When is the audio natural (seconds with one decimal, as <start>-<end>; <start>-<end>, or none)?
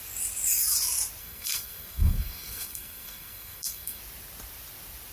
0.0-1.2; 4.0-5.1